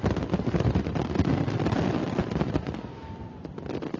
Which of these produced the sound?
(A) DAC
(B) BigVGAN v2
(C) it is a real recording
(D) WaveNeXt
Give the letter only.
C